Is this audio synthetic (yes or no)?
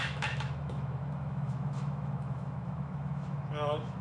yes